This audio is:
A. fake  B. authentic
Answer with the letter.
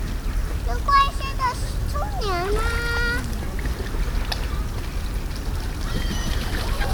B